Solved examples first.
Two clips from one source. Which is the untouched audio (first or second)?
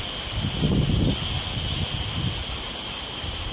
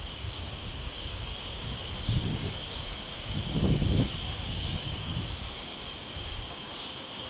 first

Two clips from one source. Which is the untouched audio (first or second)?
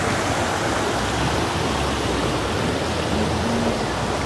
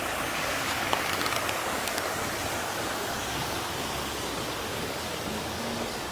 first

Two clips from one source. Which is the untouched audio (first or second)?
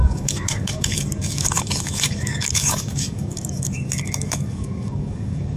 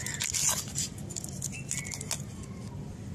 second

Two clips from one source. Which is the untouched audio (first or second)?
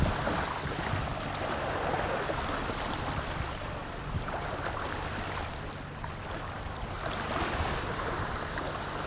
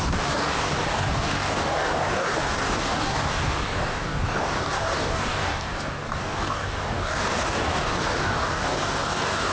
first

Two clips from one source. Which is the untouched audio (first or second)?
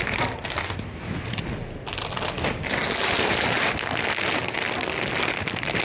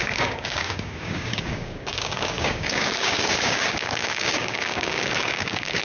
first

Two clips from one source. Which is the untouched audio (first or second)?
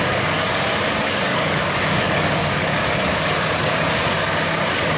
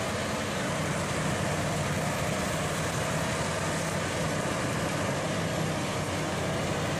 second